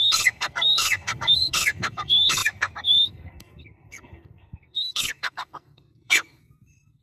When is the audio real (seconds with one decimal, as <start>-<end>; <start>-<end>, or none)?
none